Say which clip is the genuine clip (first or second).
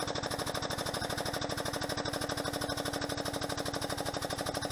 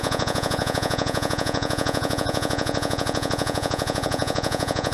first